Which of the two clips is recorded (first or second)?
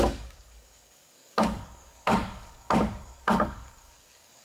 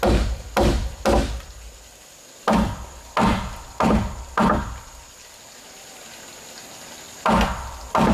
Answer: second